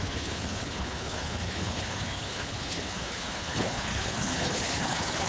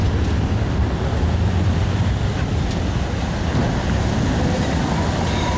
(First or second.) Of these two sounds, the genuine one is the second